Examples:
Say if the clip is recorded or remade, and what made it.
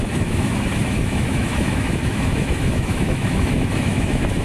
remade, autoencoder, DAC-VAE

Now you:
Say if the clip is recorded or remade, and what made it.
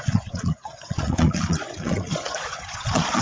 remade, vocoder, Vocos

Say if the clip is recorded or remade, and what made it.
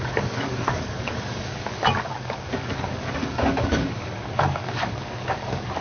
remade, codec, DAC